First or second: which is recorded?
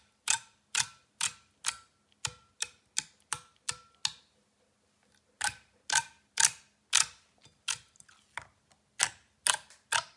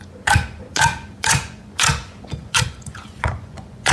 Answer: first